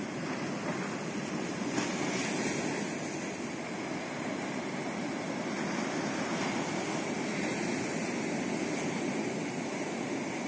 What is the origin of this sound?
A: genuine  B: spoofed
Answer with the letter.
A